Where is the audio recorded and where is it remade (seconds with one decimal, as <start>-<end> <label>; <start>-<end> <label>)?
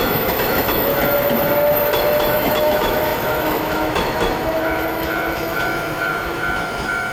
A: 0.0-0.9 remade; 0.9-2.2 recorded; 2.2-7.1 remade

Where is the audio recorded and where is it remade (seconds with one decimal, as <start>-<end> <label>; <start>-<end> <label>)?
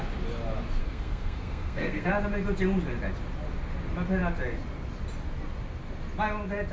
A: 0.0-0.8 recorded; 0.8-2.1 remade; 2.1-6.7 recorded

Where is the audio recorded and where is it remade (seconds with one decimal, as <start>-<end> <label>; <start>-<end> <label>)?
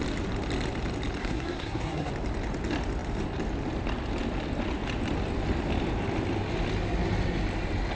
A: 0.0-1.2 recorded; 1.2-2.1 remade; 2.1-7.9 recorded